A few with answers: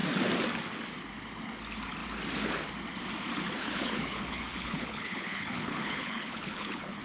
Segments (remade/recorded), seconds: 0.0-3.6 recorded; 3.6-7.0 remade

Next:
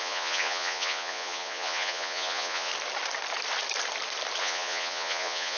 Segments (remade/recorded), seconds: 0.0-2.7 remade; 2.7-4.4 recorded; 4.4-5.6 remade